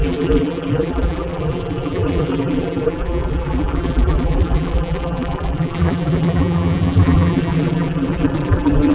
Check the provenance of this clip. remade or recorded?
remade